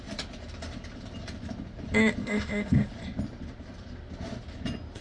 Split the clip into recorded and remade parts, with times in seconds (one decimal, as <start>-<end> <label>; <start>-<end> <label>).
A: 0.0-2.2 recorded; 2.2-2.9 remade; 2.9-5.0 recorded